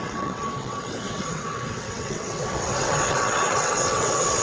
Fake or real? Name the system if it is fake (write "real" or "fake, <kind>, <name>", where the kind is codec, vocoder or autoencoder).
fake, vocoder, WaveNeXt